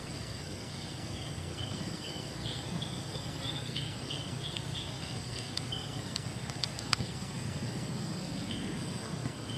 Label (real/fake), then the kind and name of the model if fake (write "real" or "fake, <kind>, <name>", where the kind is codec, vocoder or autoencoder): fake, codec, SNAC